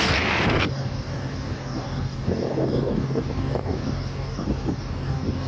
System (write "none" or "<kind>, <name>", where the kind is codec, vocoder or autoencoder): codec, DAC